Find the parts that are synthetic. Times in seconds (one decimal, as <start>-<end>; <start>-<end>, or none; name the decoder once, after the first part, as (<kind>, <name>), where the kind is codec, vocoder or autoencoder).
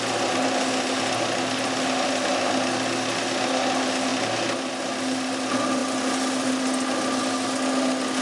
none